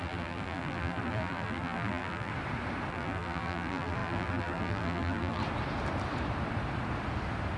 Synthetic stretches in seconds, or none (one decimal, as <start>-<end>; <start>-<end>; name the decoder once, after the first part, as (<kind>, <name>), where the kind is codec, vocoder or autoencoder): 0.0-2.3 (vocoder, BigVGAN v2); 2.9-5.4